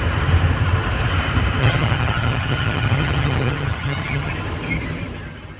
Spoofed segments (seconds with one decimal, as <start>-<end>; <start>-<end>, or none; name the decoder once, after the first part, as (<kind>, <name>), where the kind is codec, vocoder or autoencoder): 1.6-4.3 (vocoder, HiFi-GAN)